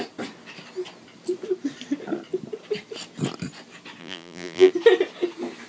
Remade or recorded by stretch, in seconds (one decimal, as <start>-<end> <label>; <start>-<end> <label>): 0.0-4.0 recorded; 4.0-4.7 remade; 4.7-5.7 recorded